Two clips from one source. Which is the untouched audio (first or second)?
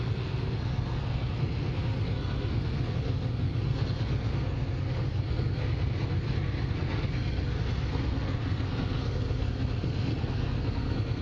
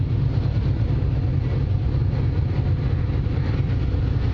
second